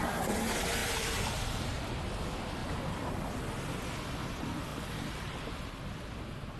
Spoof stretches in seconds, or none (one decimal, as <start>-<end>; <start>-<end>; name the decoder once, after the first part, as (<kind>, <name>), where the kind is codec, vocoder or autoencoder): 0.8-2.0 (vocoder, BigVGAN v2); 2.6-3.1; 4.7-5.7